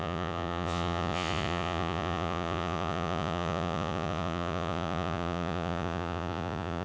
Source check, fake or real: fake